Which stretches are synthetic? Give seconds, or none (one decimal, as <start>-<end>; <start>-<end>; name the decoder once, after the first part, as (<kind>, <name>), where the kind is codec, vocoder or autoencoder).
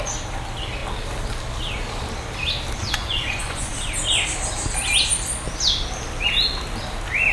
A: 2.8-3.7 (vocoder, Vocos)